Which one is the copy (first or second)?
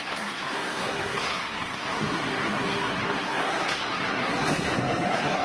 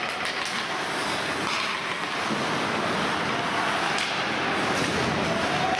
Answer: first